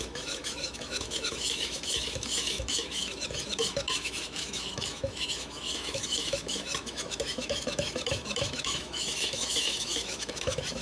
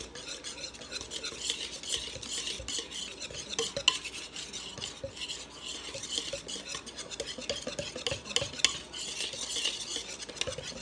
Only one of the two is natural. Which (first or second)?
second